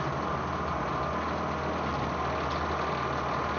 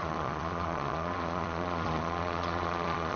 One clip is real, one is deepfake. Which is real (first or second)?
first